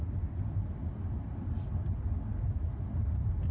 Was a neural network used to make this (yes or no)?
no